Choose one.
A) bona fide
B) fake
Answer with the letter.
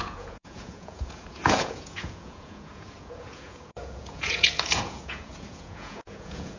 B